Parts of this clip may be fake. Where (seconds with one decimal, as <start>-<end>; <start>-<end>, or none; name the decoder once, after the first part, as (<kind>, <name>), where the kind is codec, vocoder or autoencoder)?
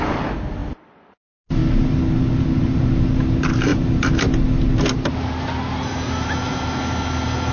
0.6-1.1 (vocoder, BigVGAN v2)